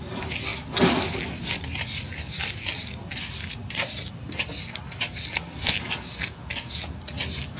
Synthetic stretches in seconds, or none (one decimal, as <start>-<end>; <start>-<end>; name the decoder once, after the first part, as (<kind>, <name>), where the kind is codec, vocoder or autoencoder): none